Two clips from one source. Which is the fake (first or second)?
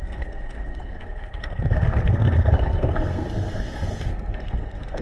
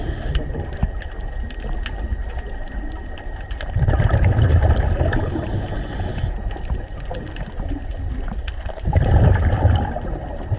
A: first